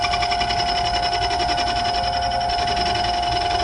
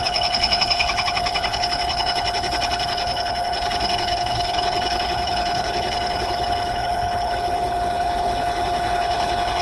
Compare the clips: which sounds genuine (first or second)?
first